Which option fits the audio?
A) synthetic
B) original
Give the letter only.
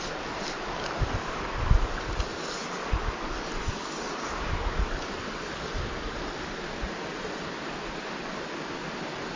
B